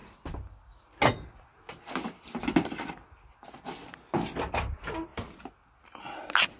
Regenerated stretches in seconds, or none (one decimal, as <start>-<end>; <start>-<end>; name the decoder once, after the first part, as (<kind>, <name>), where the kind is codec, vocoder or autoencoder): none